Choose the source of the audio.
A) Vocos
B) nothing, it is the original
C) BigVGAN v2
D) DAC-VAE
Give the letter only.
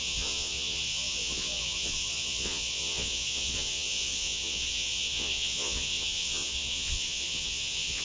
A